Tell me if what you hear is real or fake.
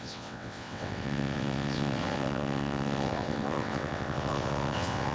fake